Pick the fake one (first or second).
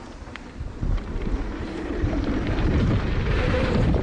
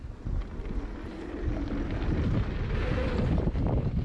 first